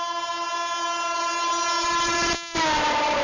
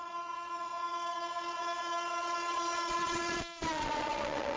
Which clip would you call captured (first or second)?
first